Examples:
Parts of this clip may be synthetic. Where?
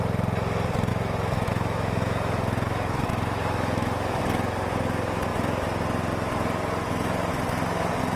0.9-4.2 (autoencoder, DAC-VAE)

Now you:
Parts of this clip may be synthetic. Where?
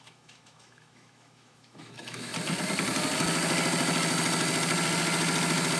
0.0-2.3 (autoencoder, DAC-VAE)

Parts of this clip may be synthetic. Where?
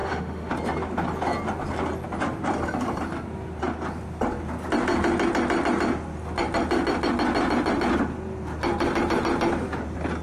0.0-0.5 (autoencoder, DAC-VAE)